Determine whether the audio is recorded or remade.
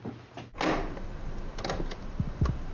recorded